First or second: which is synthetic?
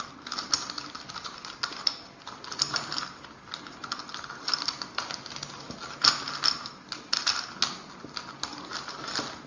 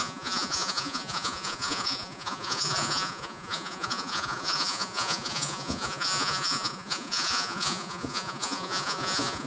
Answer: second